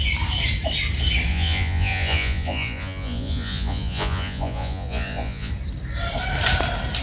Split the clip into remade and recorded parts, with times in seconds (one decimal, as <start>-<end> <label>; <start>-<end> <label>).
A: 0.0-1.3 recorded; 1.3-5.5 remade; 5.5-7.0 recorded